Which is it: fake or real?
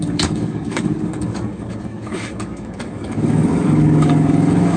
fake